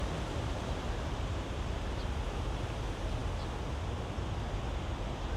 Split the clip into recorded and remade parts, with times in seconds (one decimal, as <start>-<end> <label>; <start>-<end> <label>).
0.0-2.8 remade; 2.8-5.4 recorded